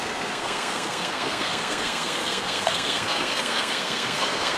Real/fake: fake